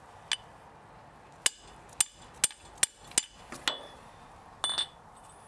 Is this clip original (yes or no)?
yes